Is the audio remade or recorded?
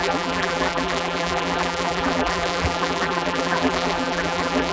remade